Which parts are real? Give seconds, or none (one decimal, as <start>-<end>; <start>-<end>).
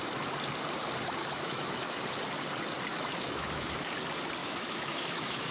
0.0-1.2; 2.0-2.9; 3.9-4.4